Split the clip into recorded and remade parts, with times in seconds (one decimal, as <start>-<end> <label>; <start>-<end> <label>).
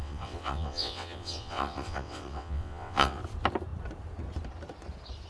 0.0-3.2 remade; 3.2-5.3 recorded